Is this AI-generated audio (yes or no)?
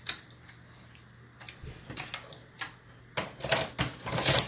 no